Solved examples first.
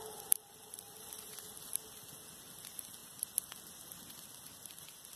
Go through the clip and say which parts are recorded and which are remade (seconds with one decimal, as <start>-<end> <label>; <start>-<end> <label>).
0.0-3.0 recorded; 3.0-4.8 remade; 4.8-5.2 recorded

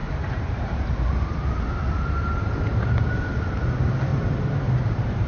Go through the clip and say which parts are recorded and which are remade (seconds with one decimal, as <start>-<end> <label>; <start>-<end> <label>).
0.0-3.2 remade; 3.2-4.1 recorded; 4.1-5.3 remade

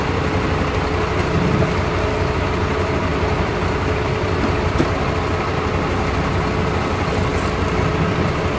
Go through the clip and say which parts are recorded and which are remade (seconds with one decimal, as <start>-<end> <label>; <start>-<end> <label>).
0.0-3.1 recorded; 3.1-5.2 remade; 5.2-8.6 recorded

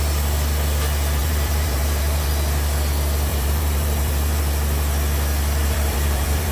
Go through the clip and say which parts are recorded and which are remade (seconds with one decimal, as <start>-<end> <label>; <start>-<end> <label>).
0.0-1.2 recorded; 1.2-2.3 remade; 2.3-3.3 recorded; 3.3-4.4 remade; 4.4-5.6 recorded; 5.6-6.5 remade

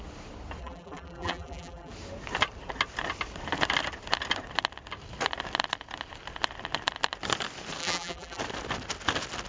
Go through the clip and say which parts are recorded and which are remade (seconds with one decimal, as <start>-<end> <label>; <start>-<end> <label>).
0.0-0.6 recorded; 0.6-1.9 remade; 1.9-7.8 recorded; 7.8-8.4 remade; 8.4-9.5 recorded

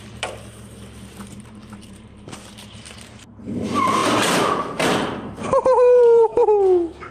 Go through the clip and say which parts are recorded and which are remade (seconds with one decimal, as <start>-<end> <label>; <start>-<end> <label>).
0.0-6.3 remade; 6.3-7.1 recorded

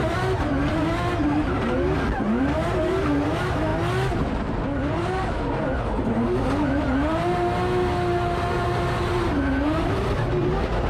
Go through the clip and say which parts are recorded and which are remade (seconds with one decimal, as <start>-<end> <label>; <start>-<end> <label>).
0.0-10.9 recorded

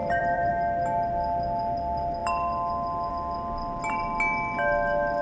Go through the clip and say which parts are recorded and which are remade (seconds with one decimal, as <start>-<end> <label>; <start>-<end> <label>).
0.0-0.5 remade; 0.5-5.2 recorded